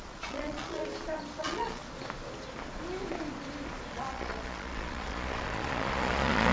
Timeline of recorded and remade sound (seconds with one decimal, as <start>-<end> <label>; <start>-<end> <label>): 0.0-0.8 remade; 0.8-1.4 recorded; 1.4-1.8 remade; 1.8-3.9 recorded; 3.9-6.5 remade

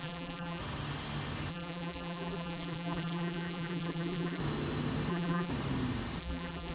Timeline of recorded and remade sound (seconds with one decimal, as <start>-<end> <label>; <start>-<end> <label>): 0.0-0.6 remade; 0.6-1.5 recorded; 1.5-4.4 remade; 4.4-5.1 recorded; 5.1-5.5 remade; 5.5-6.2 recorded; 6.2-6.7 remade

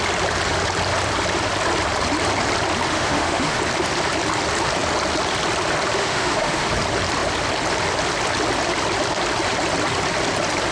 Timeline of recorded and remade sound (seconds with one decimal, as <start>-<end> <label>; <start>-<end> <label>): 0.0-2.9 recorded; 2.9-3.6 remade; 3.6-6.0 recorded; 6.0-6.7 remade; 6.7-10.7 recorded

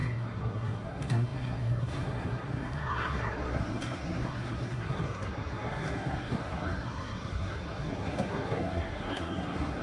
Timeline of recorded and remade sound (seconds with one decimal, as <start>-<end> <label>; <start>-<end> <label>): 0.0-9.8 remade

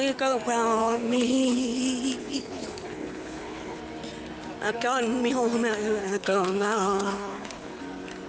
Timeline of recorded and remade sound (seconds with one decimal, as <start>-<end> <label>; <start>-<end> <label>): 0.0-0.8 recorded; 0.8-1.8 remade; 1.8-2.2 recorded; 2.2-3.8 remade; 3.8-6.0 recorded; 6.0-7.8 remade; 7.8-8.3 recorded

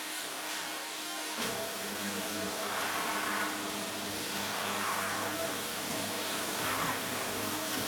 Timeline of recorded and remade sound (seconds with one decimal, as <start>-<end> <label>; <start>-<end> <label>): 0.0-2.9 remade; 2.9-4.1 recorded; 4.1-7.9 remade

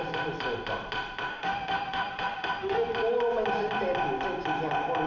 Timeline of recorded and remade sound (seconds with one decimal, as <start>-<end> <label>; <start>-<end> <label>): 0.0-1.3 recorded; 1.3-2.9 remade; 2.9-5.1 recorded

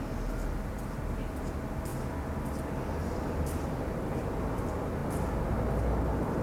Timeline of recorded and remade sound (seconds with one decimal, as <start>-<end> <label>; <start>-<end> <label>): 0.0-6.4 recorded